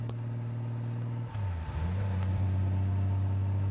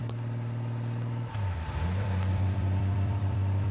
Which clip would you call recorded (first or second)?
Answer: first